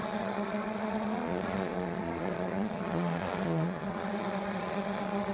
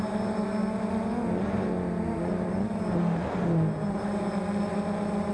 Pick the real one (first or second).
second